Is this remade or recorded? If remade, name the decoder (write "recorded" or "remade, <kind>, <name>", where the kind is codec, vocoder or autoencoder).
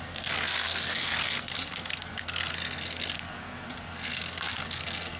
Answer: remade, codec, SNAC